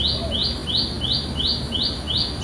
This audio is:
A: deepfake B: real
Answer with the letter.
B